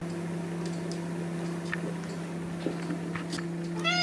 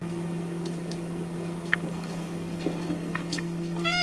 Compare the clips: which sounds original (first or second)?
first